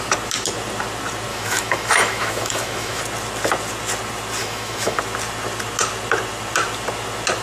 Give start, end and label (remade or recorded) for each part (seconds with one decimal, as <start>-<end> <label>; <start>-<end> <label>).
0.0-1.3 recorded; 1.3-3.0 remade; 3.0-4.4 recorded; 4.4-5.0 remade; 5.0-7.4 recorded